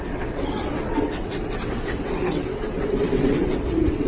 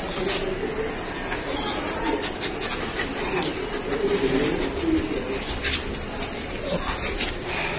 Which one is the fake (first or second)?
first